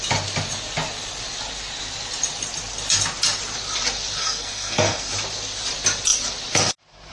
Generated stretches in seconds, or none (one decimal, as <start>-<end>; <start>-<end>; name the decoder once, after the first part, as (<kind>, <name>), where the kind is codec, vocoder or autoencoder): 4.2-5.1 (codec, SNAC)